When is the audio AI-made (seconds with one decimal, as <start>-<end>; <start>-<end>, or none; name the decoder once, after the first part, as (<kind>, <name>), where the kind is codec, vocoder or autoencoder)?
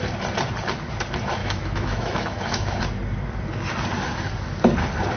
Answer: 1.4-2.8 (autoencoder, DAC-VAE)